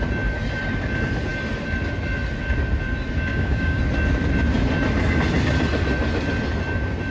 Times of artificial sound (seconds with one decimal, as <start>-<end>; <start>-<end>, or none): 3.3-3.8